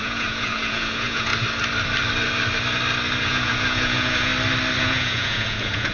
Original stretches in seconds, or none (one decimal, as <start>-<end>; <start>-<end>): 1.3-3.3; 4.3-4.8